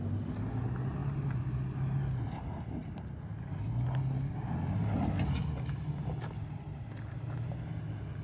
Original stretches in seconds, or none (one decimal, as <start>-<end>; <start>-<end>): 0.0-8.2